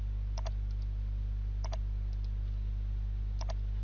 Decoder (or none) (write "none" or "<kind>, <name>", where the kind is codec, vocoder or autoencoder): none